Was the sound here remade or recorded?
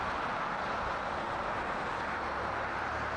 remade